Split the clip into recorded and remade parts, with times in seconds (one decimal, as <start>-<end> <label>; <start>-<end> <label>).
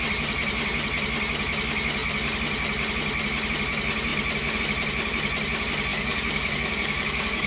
0.0-5.9 recorded; 5.9-7.5 remade